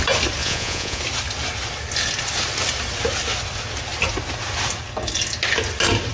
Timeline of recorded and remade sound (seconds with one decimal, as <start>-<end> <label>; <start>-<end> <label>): 0.0-0.4 recorded; 0.4-1.0 remade; 1.0-6.1 recorded